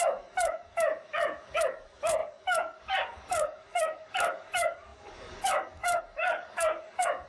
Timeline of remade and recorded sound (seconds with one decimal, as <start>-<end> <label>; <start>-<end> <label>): 0.0-7.3 remade